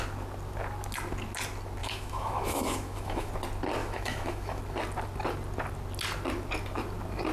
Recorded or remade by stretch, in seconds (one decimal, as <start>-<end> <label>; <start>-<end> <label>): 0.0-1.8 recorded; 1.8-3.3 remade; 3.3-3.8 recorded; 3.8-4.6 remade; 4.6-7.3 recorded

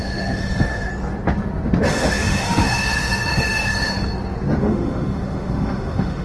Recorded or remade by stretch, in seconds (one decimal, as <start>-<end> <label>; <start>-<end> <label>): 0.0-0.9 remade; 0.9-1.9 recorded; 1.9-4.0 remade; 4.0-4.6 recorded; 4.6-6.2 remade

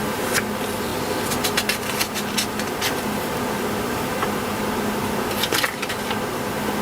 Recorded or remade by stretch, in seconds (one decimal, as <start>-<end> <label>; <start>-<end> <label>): 0.0-6.8 recorded